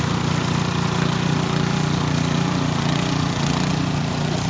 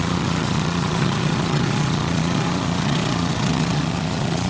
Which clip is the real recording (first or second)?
first